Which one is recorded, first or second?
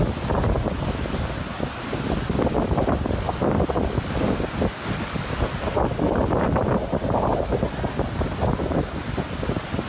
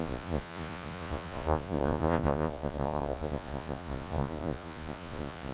first